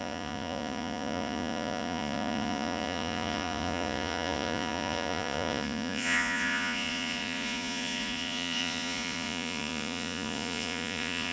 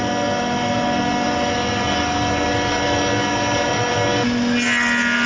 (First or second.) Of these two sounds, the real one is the second